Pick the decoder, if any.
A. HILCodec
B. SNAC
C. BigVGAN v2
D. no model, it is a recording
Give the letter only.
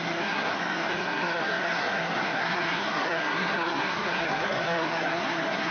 B